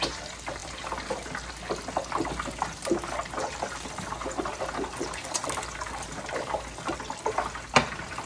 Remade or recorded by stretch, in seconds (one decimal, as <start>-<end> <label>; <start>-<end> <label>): 0.0-8.3 recorded